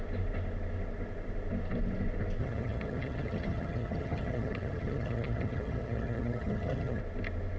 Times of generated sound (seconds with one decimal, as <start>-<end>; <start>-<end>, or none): 2.4-7.0